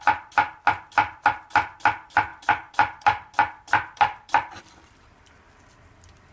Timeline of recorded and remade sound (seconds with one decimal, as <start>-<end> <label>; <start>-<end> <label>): 0.0-2.3 recorded; 2.3-6.3 remade